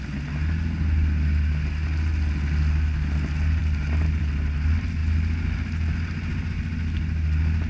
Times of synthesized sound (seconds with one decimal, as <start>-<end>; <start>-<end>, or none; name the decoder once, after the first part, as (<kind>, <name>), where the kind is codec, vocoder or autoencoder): none